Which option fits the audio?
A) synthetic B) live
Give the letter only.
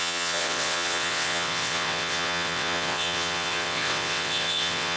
A